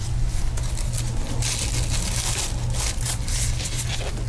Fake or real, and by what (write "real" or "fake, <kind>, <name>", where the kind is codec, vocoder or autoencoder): real